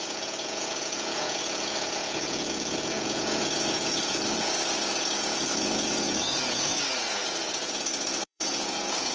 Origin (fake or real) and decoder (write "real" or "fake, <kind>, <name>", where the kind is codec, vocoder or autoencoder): fake, vocoder, Vocos